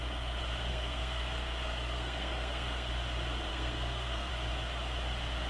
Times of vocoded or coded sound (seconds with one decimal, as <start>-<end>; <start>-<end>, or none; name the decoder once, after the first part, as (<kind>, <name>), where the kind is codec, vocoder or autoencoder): 0.7-2.9 (codec, SNAC); 3.5-4.3

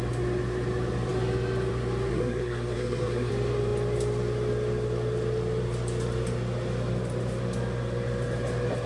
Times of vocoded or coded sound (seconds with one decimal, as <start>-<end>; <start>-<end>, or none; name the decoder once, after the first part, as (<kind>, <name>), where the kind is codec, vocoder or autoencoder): 2.1-3.3 (codec, SNAC)